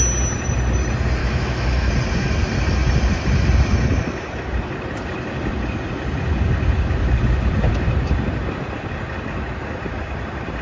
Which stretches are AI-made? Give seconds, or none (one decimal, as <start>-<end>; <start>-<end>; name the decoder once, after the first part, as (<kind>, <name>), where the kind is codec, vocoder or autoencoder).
1.2-1.9 (autoencoder, DAC-VAE)